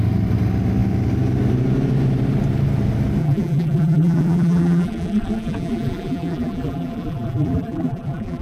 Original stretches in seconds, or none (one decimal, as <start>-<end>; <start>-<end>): 0.0-3.2